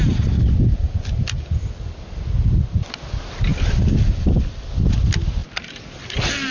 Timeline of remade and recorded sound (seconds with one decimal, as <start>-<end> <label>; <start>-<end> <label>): 0.0-6.5 recorded

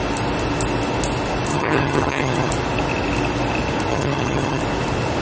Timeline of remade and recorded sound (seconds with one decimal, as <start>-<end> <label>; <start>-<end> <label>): 0.0-1.5 recorded; 1.5-2.5 remade; 2.5-3.9 recorded; 3.9-4.6 remade; 4.6-5.2 recorded